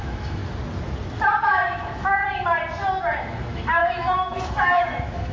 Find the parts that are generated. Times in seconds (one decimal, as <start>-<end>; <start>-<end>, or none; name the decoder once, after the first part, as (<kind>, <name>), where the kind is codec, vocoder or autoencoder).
0.0-0.4 (autoencoder, DAC-VAE); 1.4-2.2; 3.2-5.3